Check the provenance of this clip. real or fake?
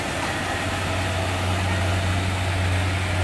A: real